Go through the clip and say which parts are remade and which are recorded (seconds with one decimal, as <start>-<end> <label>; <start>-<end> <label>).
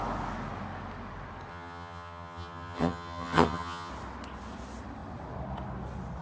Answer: 0.0-1.5 recorded; 1.5-3.9 remade; 3.9-6.2 recorded